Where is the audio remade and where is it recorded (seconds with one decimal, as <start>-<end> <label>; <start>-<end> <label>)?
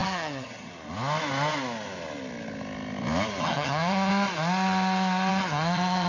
0.0-0.7 remade; 0.7-3.4 recorded; 3.4-4.1 remade; 4.1-5.3 recorded; 5.3-6.1 remade